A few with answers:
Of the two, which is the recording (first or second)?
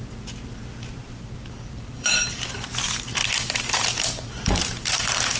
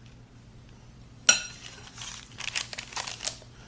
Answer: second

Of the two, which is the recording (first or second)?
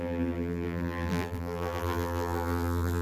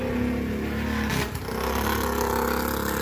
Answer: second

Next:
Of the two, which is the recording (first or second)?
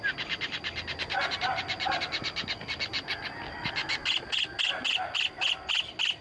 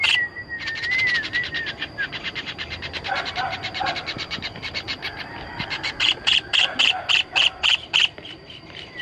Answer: first